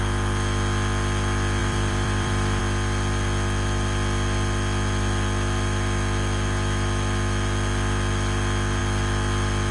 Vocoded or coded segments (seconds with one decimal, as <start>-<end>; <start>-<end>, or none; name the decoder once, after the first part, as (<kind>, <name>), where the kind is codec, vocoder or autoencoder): 1.6-2.6 (vocoder, BigVGAN v2)